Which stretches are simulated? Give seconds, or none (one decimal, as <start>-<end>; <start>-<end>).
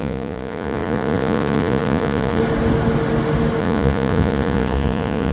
0.0-2.4; 3.6-5.3